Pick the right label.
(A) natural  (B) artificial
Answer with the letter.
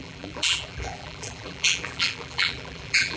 B